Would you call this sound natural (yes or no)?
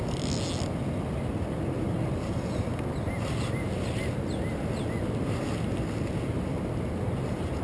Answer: yes